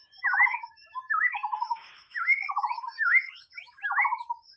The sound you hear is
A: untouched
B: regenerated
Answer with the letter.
B